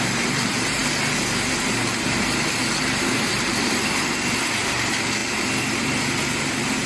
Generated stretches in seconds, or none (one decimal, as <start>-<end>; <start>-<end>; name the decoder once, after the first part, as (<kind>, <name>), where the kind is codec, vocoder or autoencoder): 0.0-0.8 (vocoder, BigVGAN v2); 3.3-5.2